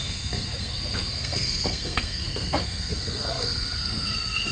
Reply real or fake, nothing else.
fake